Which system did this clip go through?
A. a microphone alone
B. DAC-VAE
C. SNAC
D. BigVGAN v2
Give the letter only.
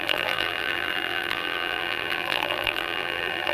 D